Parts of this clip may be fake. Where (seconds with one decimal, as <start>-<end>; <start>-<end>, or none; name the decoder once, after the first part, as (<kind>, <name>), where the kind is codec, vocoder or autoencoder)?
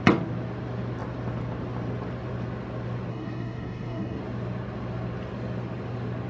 3.1-4.2 (codec, SNAC)